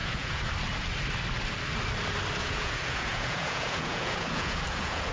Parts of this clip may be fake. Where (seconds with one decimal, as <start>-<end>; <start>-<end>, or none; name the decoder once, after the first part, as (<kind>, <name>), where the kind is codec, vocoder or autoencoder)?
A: 0.0-0.5 (vocoder, Vocos); 2.4-5.1